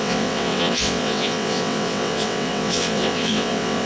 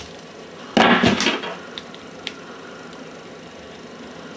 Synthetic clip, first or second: first